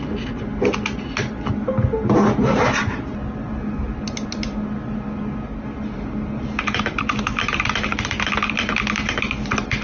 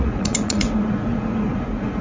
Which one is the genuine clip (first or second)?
first